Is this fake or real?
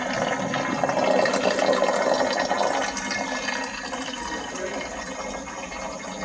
real